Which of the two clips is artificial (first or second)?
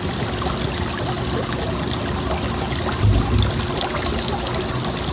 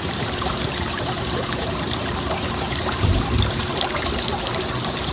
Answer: second